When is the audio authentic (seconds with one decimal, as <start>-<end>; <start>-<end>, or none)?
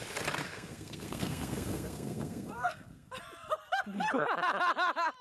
0.0-0.5; 3.1-5.2